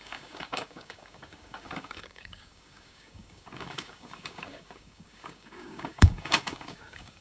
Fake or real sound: fake